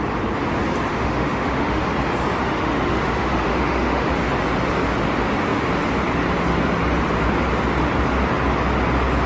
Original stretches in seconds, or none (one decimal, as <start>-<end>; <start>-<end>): 0.0-0.9; 1.8-2.4; 4.0-9.3